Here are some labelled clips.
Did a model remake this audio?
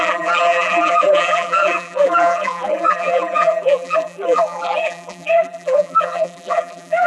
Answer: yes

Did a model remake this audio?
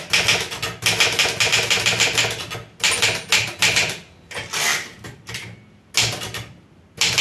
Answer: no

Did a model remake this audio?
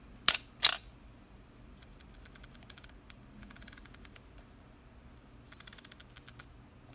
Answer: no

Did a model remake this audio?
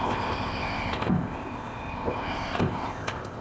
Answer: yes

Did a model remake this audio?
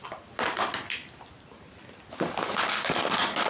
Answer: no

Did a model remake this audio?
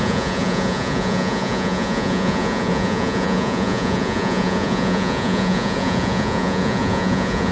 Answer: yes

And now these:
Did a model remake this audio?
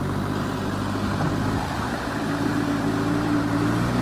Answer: no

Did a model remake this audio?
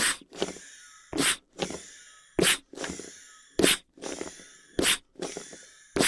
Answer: no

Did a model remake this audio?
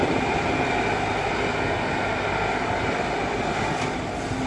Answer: no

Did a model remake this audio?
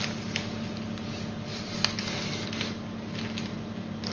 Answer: no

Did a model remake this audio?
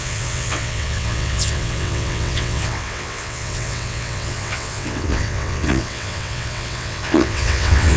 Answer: yes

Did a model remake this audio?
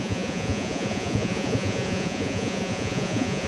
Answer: yes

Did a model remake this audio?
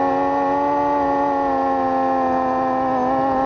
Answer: no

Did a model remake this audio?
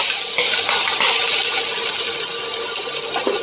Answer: no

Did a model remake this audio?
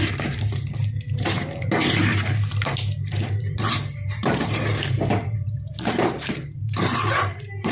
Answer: yes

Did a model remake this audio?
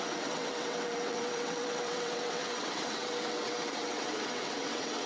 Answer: yes